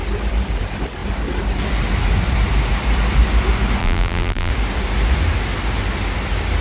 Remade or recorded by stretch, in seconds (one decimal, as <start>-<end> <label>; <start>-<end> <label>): 0.0-3.8 recorded; 3.8-4.5 remade; 4.5-6.6 recorded

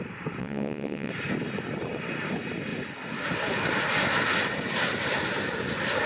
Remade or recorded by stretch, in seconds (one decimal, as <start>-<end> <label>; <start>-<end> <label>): 0.0-0.4 recorded; 0.4-1.1 remade; 1.1-6.1 recorded

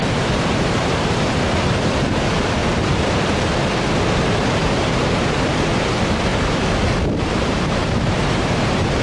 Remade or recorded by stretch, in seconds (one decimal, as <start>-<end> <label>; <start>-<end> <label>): 0.0-2.6 remade; 2.6-3.1 recorded; 3.1-3.6 remade; 3.6-4.5 recorded; 4.5-6.3 remade; 6.3-7.2 recorded; 7.2-9.0 remade

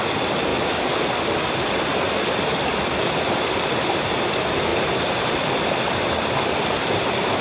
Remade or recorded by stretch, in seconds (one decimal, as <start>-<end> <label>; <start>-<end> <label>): 0.0-0.5 remade; 0.5-2.4 recorded; 2.4-4.7 remade; 4.7-5.9 recorded; 5.9-7.4 remade